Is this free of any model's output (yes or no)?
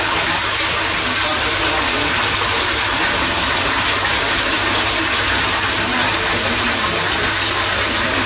no